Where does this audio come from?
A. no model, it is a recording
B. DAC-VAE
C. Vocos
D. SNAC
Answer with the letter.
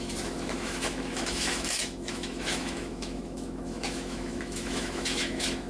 B